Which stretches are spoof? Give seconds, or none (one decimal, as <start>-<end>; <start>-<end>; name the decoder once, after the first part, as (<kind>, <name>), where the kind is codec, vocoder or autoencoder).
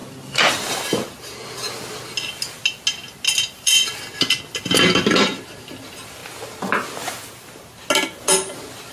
none